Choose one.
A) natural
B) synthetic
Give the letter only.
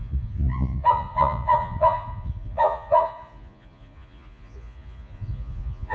B